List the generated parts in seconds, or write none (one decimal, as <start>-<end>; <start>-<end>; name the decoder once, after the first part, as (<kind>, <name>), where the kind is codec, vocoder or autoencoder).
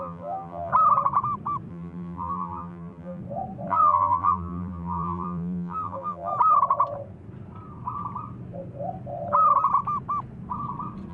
0.0-0.7 (vocoder, BigVGAN v2); 1.7-3.2; 3.7-6.3